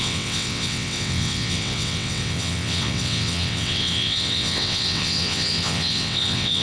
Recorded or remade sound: remade